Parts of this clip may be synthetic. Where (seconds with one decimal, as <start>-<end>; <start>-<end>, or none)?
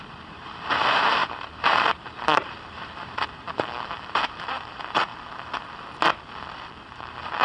0.0-5.1; 6.7-7.4